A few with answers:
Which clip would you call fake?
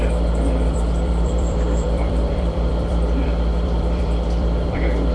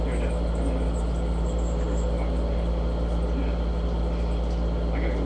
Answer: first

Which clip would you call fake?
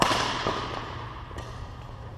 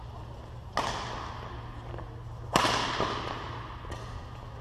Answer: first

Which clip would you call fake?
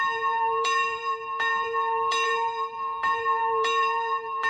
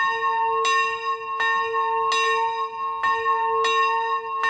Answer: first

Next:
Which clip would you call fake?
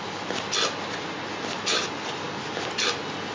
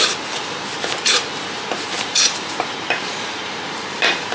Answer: second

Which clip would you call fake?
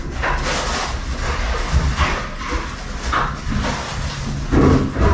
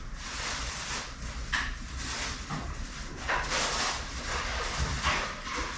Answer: second